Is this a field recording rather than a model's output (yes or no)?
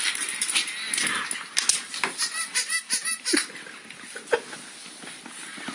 yes